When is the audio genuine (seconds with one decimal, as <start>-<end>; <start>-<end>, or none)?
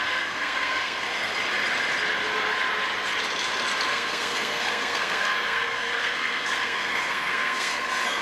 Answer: 1.3-3.9